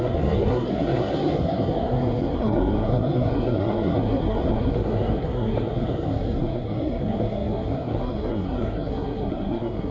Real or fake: fake